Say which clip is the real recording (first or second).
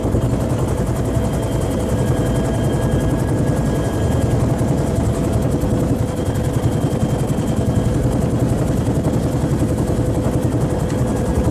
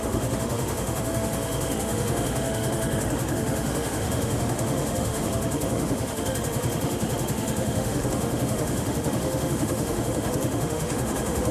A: first